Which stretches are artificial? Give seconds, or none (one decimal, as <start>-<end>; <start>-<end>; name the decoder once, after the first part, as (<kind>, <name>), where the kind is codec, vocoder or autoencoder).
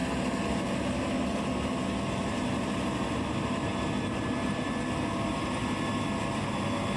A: none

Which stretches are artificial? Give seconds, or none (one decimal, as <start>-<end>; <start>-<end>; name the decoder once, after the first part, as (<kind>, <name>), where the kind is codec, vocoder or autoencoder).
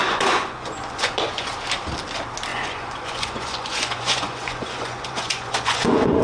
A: 0.0-1.5 (vocoder, Vocos); 2.5-6.2